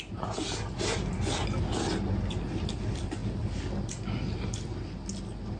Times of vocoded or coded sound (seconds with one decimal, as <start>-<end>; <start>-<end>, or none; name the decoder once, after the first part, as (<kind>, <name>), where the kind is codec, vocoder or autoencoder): none